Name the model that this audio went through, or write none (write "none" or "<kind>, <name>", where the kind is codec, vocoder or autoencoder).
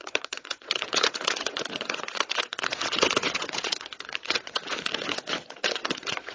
vocoder, WaveNeXt